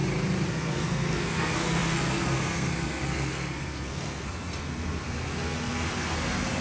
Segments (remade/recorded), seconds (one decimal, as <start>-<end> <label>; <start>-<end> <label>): 0.0-0.5 recorded; 0.5-6.6 remade